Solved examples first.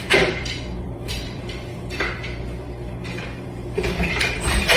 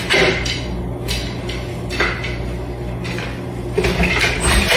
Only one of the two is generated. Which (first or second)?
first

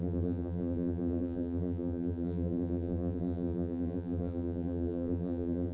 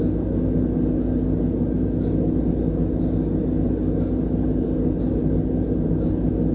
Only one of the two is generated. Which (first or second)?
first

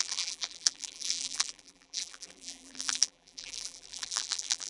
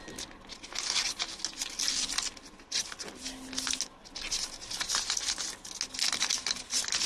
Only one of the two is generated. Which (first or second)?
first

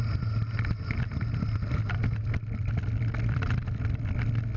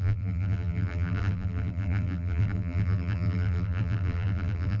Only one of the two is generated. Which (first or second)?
second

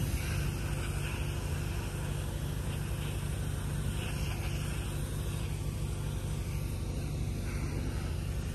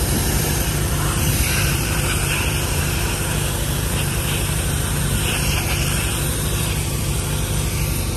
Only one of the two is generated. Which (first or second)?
second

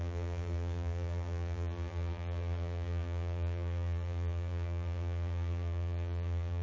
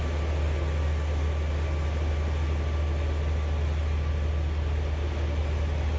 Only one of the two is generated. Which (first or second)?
first